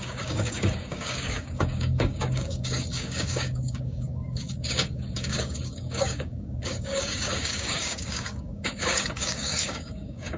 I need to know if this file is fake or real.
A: fake